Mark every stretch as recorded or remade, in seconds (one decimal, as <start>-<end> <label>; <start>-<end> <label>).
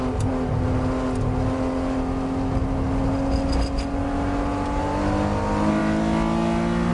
0.0-6.9 recorded